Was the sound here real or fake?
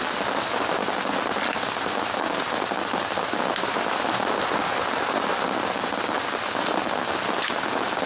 real